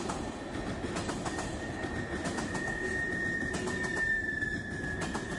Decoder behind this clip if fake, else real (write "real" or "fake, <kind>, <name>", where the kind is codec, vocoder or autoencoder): real